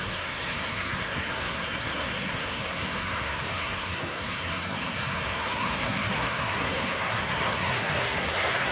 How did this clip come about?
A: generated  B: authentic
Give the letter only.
A